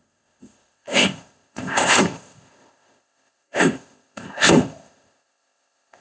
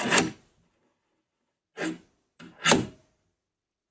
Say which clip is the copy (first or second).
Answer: first